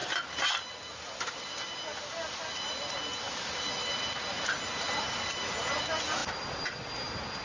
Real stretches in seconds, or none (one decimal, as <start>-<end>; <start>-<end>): 0.0-7.4